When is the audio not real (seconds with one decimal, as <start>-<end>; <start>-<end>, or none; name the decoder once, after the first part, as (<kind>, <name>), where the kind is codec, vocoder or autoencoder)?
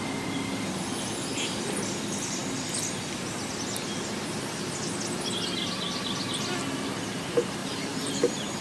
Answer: 7.6-8.6 (vocoder, BigVGAN v2)